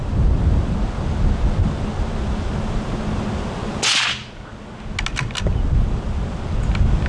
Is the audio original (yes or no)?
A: yes